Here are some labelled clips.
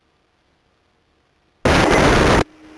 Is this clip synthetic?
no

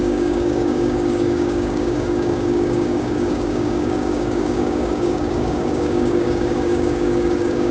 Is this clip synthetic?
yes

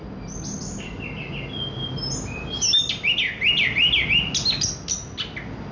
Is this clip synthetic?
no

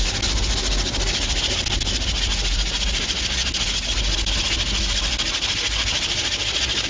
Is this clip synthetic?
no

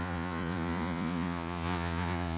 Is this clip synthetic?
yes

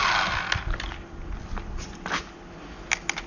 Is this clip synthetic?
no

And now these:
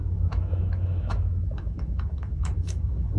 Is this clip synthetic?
yes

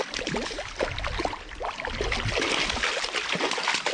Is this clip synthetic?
no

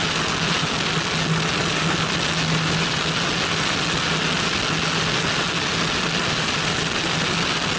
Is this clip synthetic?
no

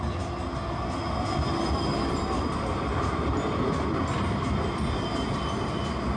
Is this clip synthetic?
no